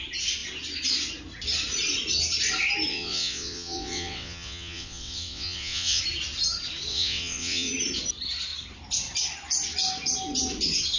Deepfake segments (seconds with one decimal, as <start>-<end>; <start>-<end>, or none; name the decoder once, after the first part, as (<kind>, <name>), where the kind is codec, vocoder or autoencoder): 2.9-6.0 (vocoder, WaveNeXt); 6.9-7.7